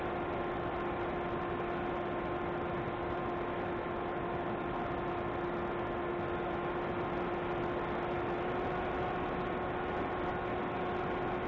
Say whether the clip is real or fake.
real